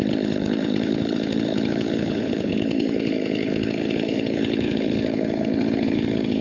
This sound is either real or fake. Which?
fake